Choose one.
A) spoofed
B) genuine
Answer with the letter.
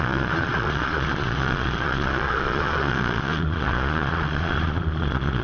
A